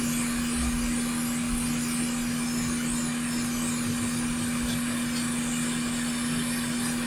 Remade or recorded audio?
recorded